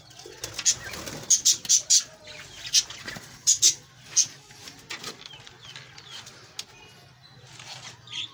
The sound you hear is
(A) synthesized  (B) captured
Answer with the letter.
B